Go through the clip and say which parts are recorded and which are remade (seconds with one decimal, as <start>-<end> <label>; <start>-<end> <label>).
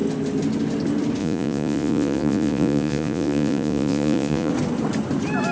0.0-1.2 recorded; 1.2-4.5 remade; 4.5-5.5 recorded